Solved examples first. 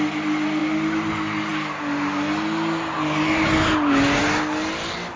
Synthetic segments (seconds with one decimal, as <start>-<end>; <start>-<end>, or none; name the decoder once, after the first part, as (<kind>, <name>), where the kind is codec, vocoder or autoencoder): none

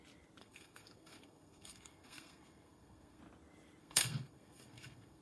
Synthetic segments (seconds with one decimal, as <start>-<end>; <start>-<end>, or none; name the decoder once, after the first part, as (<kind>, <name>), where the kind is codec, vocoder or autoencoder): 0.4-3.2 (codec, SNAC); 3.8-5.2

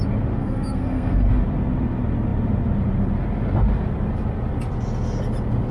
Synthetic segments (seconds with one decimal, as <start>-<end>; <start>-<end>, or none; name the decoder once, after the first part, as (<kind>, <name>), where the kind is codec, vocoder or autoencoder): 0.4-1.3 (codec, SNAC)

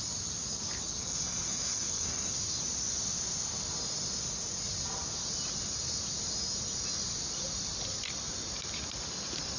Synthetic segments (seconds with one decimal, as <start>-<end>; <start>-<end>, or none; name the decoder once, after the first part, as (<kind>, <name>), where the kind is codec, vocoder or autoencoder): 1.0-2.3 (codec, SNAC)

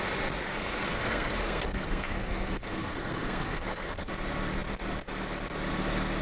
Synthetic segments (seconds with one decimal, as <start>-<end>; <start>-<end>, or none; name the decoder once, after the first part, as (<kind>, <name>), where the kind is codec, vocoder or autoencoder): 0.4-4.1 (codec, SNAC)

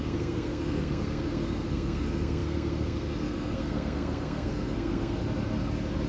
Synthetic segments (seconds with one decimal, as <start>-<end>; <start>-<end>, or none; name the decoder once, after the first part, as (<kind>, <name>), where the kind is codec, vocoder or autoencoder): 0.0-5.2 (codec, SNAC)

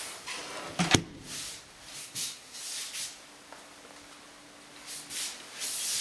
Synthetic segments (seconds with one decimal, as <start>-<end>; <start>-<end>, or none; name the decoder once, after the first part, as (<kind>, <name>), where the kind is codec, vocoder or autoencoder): 2.0-2.6 (codec, SNAC)

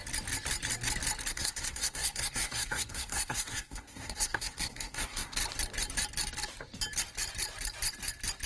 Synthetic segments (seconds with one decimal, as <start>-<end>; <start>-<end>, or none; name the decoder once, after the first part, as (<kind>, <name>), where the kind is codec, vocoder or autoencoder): 1.3-5.4 (codec, SNAC)